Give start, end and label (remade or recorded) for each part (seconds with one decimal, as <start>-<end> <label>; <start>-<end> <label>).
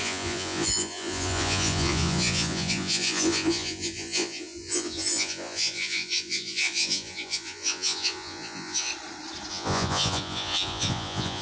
0.0-8.9 remade; 8.9-9.5 recorded; 9.5-11.4 remade